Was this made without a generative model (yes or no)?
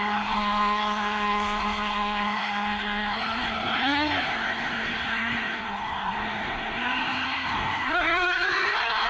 no